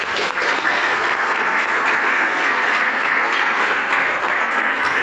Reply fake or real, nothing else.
fake